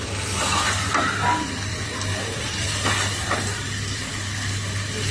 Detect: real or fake fake